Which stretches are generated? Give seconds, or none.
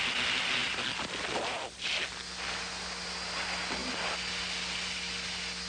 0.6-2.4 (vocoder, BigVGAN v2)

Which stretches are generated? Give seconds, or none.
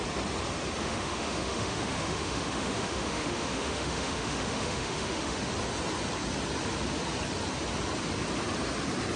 0.8-5.5 (autoencoder, DAC-VAE)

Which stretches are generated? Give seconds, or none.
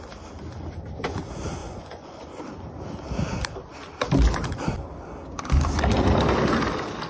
1.6-2.4 (vocoder, Vocos)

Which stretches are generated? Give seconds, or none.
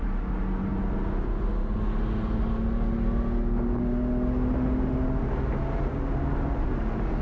none